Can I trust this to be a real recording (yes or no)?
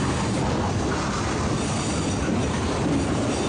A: yes